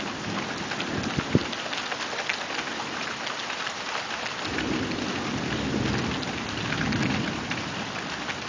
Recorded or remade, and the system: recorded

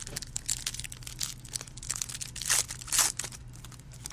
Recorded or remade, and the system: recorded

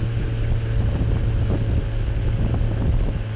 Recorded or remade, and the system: recorded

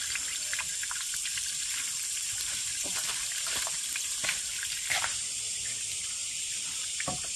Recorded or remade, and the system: remade, vocoder, BigVGAN v2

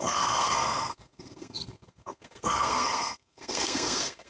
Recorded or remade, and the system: remade, codec, SNAC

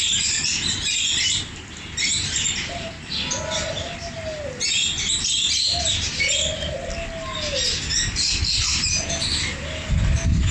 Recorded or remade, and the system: recorded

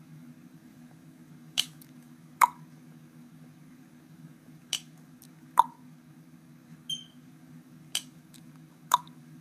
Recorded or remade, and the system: remade, codec, DAC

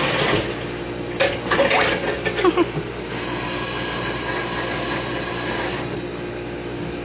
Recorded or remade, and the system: recorded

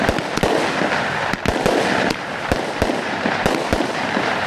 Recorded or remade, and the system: recorded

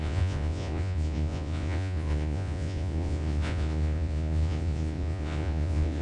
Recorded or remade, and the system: remade, vocoder, Vocos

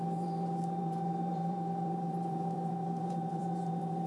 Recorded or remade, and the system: remade, vocoder, BigVGAN v2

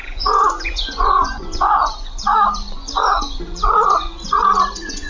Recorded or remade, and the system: remade, vocoder, Vocos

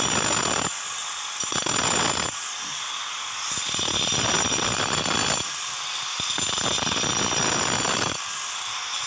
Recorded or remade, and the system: recorded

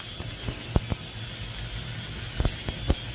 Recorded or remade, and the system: recorded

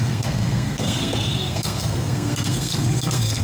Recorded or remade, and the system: remade, codec, SNAC